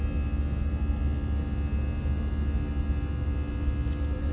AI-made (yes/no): no